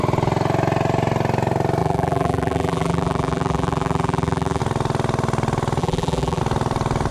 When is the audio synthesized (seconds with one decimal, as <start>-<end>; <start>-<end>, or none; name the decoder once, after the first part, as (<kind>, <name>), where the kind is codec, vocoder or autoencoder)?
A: 1.8-4.6 (vocoder, BigVGAN v2); 5.8-6.4